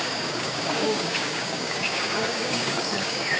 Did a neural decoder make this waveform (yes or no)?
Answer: yes